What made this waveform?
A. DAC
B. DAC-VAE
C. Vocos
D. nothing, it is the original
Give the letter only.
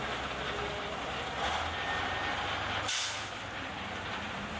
D